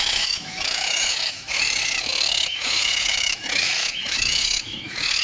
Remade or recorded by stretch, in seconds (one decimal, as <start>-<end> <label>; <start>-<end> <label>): 0.0-5.2 remade